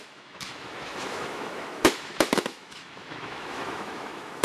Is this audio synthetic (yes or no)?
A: yes